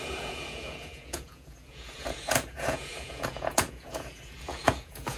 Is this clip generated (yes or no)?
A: yes